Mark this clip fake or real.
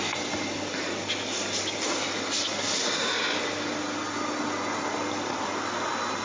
real